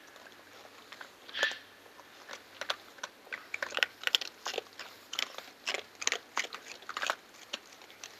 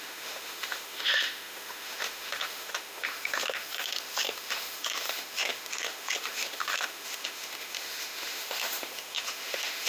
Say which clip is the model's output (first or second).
second